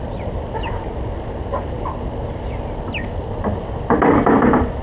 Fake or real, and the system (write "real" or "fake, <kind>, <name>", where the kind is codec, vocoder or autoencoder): real